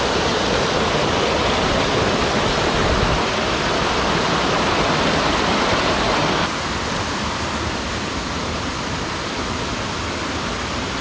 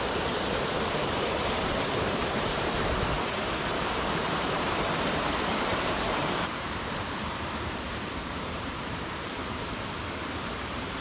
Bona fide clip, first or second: first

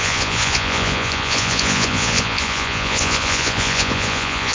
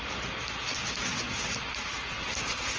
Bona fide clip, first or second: second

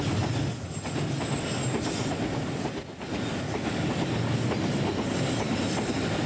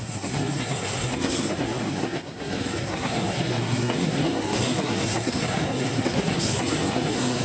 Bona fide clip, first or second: first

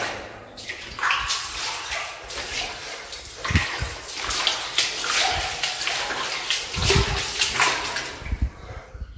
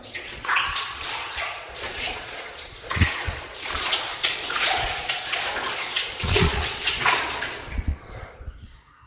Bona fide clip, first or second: first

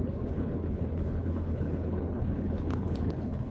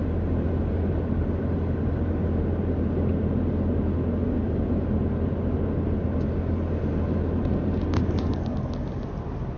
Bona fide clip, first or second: second